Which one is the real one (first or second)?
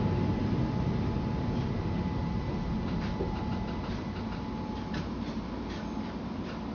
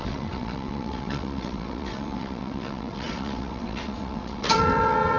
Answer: first